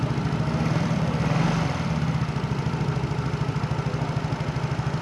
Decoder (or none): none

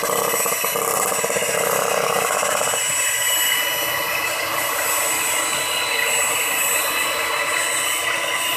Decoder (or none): none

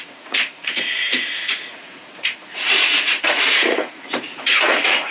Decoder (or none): vocoder, Vocos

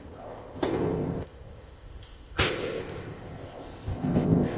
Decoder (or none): codec, ZipCodec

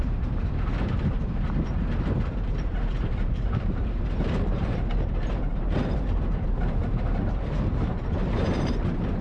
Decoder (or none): vocoder, BigVGAN v2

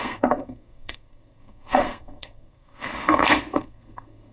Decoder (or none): codec, SNAC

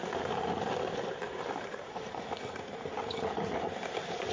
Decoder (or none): none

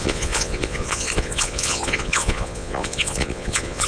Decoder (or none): vocoder, Vocos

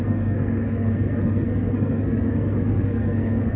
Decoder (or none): codec, SNAC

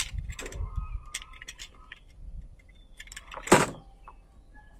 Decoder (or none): none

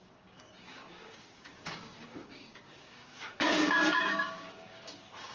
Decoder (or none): codec, DAC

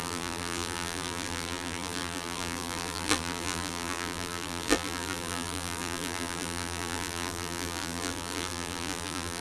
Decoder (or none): vocoder, BigVGAN v2